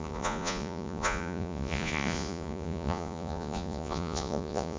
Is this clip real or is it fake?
fake